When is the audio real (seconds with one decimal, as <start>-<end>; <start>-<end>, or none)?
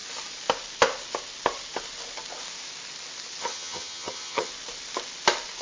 0.0-3.4; 4.5-5.6